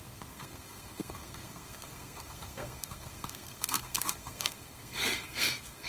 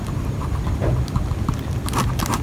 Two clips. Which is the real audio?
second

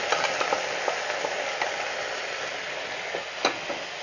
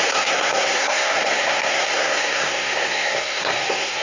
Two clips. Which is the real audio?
first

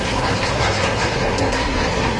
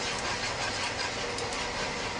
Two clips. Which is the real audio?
second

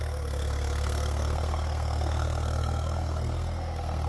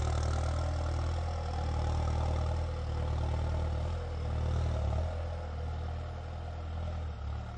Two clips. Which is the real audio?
second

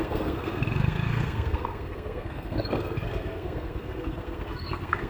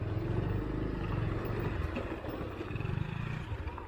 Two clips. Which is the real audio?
second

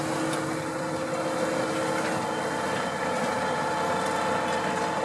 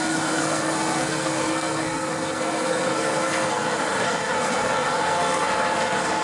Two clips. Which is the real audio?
first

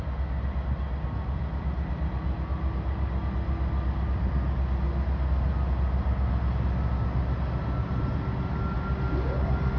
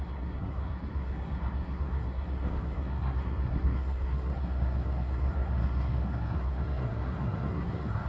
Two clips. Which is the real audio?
first